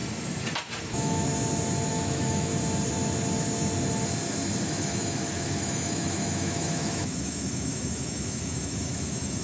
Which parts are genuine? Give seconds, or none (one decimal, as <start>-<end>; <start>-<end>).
0.0-0.8; 1.3-1.9; 2.5-4.6